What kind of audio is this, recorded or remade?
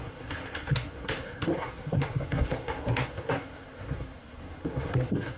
remade